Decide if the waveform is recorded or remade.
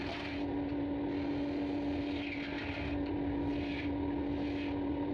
recorded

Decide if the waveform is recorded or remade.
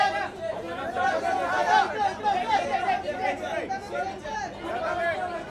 recorded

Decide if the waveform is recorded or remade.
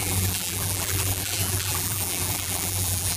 remade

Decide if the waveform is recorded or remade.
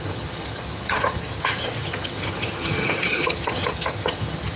remade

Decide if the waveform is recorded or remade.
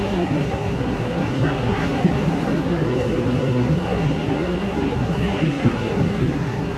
remade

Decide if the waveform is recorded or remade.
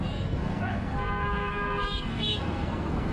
remade